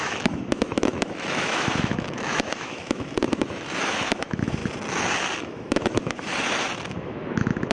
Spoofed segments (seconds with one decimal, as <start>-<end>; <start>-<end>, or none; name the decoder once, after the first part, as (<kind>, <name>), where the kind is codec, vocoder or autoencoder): 0.0-4.6 (autoencoder, DAC-VAE); 5.4-6.3; 7.0-7.7